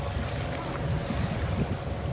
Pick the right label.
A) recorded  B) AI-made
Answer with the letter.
A